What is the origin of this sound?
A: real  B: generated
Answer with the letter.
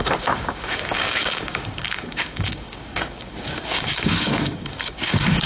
B